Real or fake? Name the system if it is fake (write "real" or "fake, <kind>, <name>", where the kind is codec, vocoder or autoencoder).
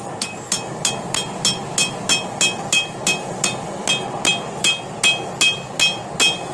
real